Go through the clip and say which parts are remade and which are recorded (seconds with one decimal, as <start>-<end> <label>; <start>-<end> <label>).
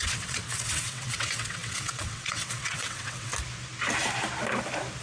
0.0-3.3 remade; 3.3-5.0 recorded